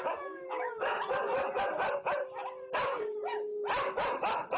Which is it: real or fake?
real